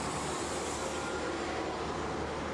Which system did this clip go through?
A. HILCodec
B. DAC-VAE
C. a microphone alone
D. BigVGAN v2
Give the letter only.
C